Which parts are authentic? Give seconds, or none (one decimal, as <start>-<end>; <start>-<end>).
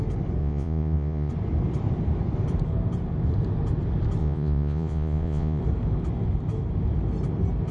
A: 0.0-0.4; 1.3-4.2; 5.6-7.7